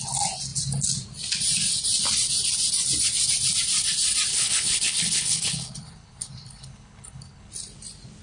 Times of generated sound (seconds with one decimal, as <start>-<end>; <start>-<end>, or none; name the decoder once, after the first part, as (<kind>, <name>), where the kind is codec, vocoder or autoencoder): 4.3-7.5 (codec, HILCodec)